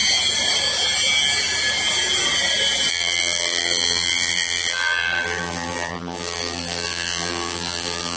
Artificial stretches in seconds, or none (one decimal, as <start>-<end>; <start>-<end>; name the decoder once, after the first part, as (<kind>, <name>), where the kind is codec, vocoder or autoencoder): 2.9-8.2 (vocoder, BigVGAN v2)